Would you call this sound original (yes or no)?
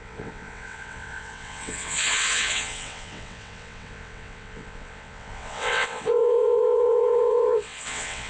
no